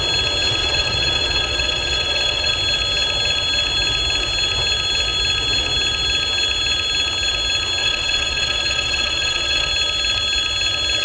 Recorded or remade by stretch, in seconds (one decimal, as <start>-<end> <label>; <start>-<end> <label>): 0.0-0.6 recorded; 0.6-2.5 remade; 2.5-7.8 recorded; 7.8-9.7 remade; 9.7-11.0 recorded